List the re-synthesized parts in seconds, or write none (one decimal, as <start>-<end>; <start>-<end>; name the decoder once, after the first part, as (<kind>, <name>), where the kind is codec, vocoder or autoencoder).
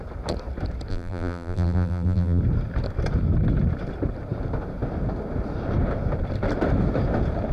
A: 0.9-2.4 (vocoder, BigVGAN v2)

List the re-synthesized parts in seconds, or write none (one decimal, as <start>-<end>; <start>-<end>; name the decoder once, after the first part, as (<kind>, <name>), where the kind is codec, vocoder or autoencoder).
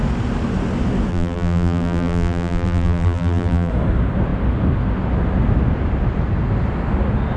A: 1.1-3.7 (vocoder, BigVGAN v2)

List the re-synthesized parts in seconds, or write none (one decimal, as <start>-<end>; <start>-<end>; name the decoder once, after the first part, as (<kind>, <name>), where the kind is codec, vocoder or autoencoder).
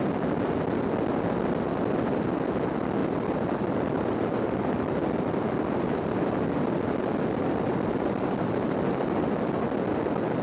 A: none